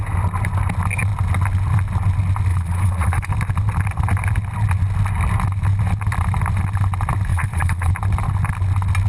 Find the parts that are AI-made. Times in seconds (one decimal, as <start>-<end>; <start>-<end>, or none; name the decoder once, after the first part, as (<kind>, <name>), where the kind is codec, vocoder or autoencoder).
2.5-3.3 (vocoder, Vocos); 7.3-7.9